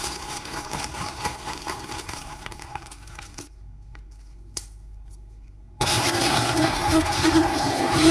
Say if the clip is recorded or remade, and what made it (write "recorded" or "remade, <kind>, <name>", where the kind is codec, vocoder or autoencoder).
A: remade, codec, SNAC